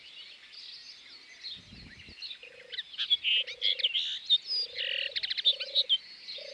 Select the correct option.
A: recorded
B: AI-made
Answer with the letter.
A